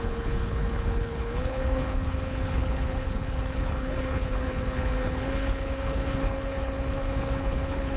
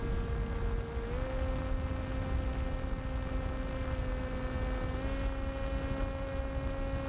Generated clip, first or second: first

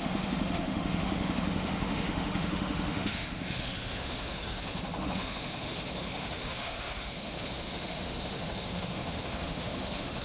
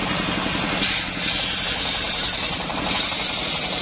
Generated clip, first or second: first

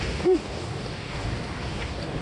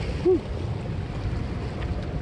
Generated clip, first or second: first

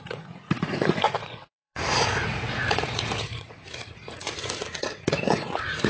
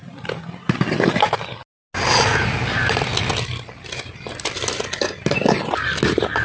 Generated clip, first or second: first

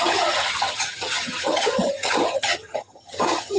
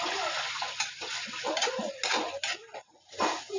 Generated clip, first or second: first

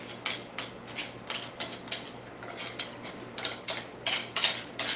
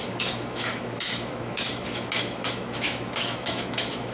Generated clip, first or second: second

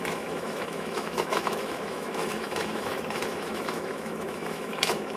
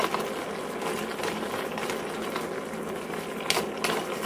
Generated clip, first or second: first